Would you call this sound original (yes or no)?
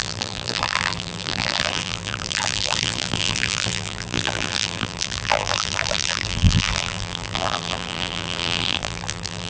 no